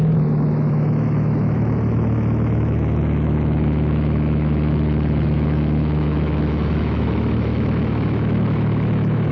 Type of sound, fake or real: fake